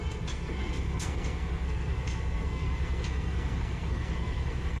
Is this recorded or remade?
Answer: remade